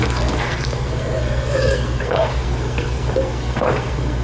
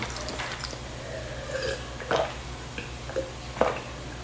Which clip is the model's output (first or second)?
first